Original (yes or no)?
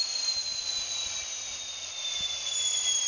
yes